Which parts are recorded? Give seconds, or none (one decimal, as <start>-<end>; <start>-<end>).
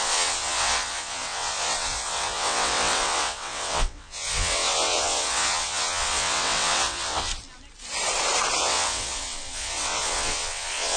7.3-8.6